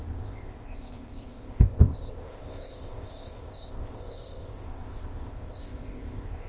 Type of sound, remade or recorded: remade